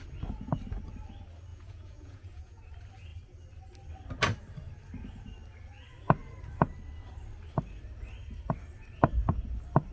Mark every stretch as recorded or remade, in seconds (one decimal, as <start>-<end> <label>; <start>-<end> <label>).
0.0-1.5 recorded; 1.5-2.6 remade; 2.6-9.9 recorded